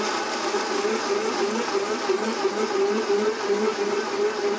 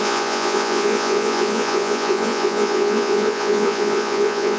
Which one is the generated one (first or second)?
second